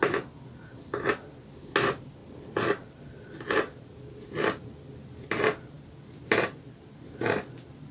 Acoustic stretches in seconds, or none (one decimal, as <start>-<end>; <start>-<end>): 0.0-2.2; 5.7-7.9